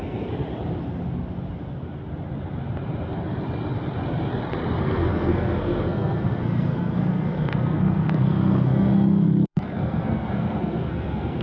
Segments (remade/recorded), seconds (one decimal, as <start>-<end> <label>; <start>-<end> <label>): 0.0-0.4 remade; 0.4-4.8 recorded; 4.8-11.4 remade